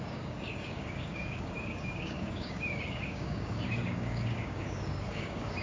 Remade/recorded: remade